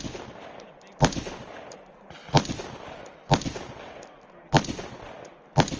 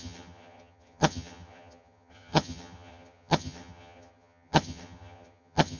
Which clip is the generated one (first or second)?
second